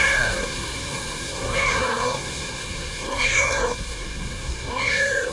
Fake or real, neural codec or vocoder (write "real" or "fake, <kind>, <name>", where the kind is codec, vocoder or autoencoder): fake, codec, SNAC